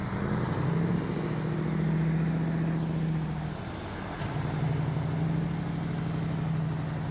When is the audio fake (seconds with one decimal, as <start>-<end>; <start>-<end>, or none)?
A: none